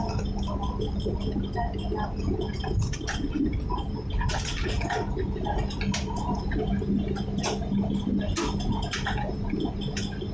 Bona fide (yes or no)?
yes